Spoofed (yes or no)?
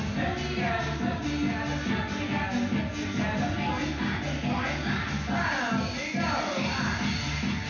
no